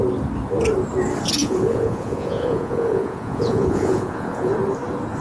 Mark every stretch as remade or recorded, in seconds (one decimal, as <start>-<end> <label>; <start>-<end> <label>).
0.0-1.4 recorded; 1.4-4.5 remade; 4.5-5.2 recorded